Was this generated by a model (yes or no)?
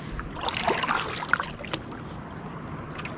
no